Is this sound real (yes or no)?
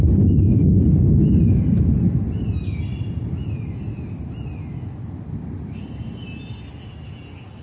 yes